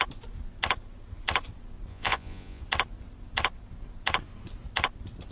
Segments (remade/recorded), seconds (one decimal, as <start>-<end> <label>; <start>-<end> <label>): 0.0-1.9 recorded; 1.9-2.6 remade; 2.6-5.3 recorded